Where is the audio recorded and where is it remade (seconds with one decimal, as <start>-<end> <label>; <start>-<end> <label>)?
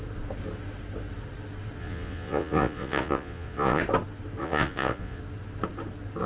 0.0-1.8 recorded; 1.8-3.8 remade; 3.8-4.4 recorded; 4.4-5.2 remade; 5.2-6.3 recorded